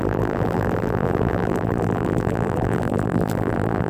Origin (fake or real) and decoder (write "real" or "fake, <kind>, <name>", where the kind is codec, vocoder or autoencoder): fake, vocoder, BigVGAN v2